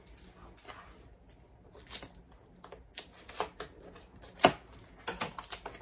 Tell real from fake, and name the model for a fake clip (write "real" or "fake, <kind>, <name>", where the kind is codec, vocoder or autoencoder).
real